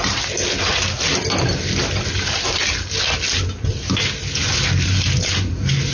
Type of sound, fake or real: real